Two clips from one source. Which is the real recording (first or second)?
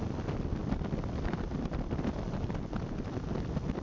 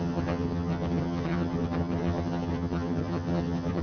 first